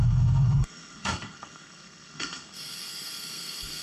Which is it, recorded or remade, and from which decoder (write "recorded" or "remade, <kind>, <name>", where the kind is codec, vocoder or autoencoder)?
remade, codec, SNAC